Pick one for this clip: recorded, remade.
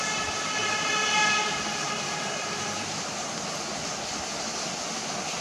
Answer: recorded